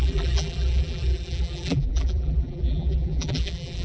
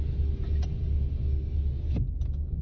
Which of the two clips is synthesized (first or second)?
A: first